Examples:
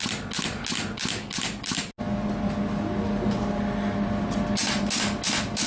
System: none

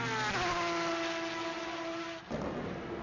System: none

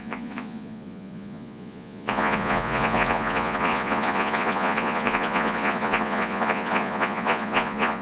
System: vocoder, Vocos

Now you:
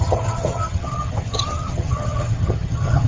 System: vocoder, HiFi-GAN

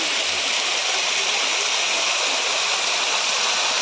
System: none